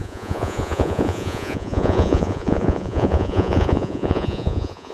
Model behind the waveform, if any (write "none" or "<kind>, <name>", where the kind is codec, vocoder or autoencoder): vocoder, Vocos